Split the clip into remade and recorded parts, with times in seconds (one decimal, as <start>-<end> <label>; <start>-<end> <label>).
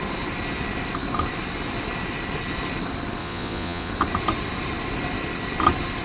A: 0.0-3.2 recorded; 3.2-3.9 remade; 3.9-6.0 recorded